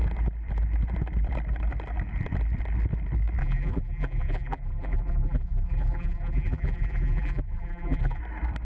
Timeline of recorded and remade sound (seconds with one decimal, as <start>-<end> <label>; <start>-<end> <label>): 0.0-3.4 recorded; 3.4-8.2 remade; 8.2-8.6 recorded